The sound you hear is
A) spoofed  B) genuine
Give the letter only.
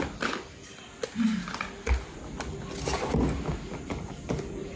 B